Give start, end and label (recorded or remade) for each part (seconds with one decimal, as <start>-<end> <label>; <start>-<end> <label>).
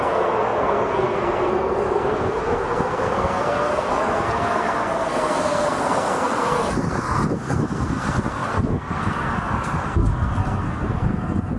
0.0-11.6 remade